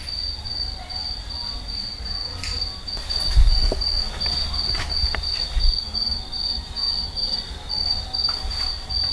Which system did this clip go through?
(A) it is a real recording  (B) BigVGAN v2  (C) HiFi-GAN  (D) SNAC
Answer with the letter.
A